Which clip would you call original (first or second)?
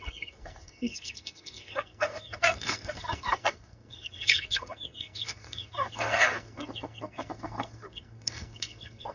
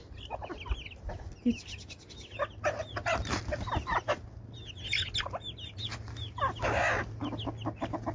second